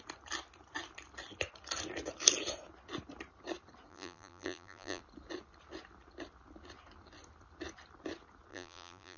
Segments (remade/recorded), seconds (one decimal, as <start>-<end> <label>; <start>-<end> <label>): 0.0-3.9 recorded; 3.9-5.0 remade; 5.0-8.5 recorded; 8.5-9.2 remade

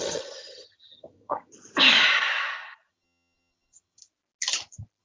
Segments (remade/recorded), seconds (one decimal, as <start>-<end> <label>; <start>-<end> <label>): 0.0-1.5 remade; 1.5-2.9 recorded; 2.9-4.0 remade; 4.0-5.0 recorded

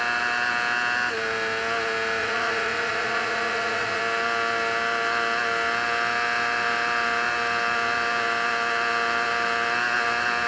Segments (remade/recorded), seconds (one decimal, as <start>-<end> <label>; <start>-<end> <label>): 0.0-2.2 recorded; 2.2-4.0 remade; 4.0-10.5 recorded

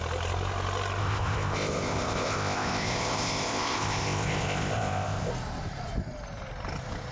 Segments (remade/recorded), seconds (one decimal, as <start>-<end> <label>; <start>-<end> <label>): 0.0-1.0 recorded; 1.0-5.3 remade; 5.3-7.1 recorded